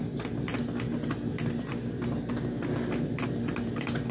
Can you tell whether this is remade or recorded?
recorded